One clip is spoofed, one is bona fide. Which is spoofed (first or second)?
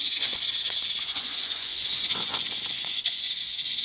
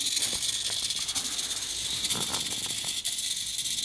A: first